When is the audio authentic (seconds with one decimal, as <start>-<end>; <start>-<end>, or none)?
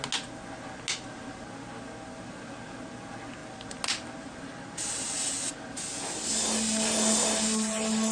0.0-8.1